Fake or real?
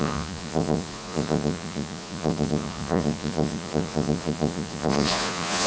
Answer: fake